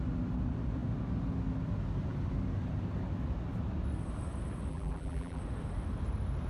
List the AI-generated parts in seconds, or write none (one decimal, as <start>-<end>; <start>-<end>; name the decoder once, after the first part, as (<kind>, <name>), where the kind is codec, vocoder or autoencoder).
4.7-5.4 (vocoder, BigVGAN v2)